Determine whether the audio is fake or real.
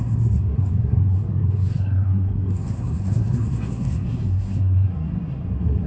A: fake